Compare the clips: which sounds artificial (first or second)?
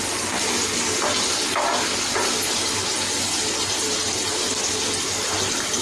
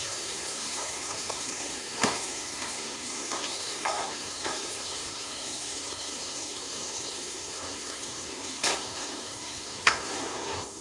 second